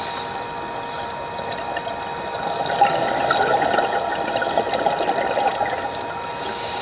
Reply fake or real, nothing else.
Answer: real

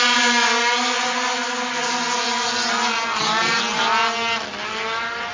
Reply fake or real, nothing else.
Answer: real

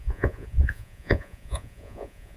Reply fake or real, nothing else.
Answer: fake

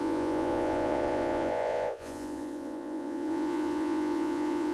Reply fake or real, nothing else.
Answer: fake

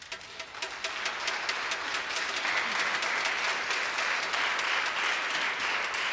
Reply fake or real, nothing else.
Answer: real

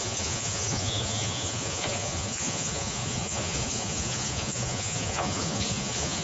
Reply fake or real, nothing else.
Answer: fake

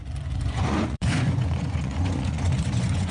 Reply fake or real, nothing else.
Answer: fake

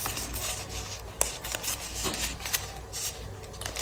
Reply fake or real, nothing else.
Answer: real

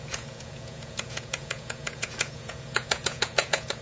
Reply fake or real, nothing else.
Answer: fake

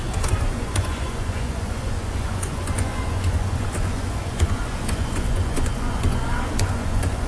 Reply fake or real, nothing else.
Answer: fake